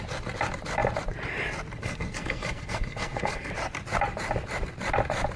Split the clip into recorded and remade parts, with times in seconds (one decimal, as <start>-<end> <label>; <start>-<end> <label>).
0.0-1.8 recorded; 1.8-3.5 remade; 3.5-5.4 recorded